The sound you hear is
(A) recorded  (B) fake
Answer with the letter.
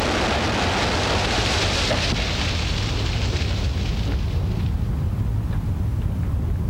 A